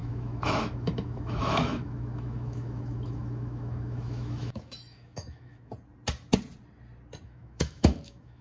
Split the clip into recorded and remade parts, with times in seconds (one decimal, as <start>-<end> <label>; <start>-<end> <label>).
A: 0.0-5.7 remade; 5.7-7.2 recorded; 7.2-8.4 remade